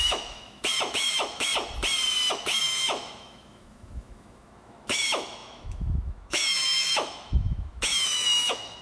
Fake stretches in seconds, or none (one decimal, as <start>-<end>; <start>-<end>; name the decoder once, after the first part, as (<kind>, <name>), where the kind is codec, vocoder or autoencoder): 0.0-1.5 (autoencoder, DAC-VAE); 2.3-8.8